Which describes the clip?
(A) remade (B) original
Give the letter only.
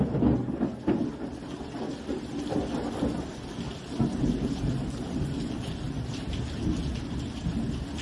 B